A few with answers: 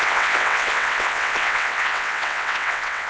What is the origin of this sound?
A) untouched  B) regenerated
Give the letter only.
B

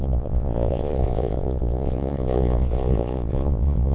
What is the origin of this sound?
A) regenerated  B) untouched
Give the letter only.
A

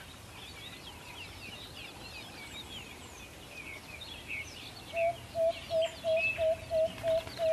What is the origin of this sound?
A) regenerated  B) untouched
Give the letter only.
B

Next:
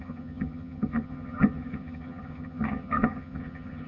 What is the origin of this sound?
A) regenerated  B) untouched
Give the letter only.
A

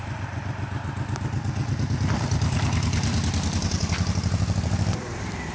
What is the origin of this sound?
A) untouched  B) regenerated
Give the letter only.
B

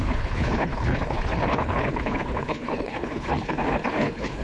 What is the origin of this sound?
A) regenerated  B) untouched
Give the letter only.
A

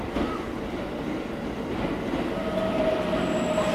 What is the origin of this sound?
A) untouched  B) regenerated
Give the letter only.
A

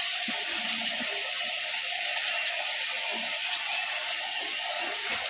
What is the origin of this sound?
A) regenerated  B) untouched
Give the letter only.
B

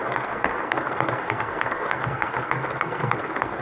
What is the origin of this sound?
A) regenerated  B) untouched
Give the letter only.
A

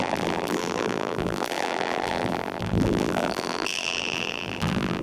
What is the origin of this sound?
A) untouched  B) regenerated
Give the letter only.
B